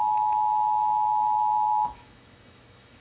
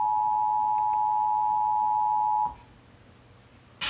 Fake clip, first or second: first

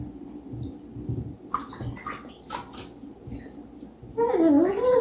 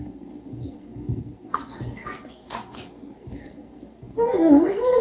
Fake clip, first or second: second